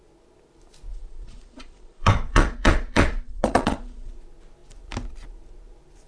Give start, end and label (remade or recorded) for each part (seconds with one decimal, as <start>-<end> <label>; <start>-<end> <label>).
0.0-0.9 recorded; 0.9-4.1 remade; 4.1-6.1 recorded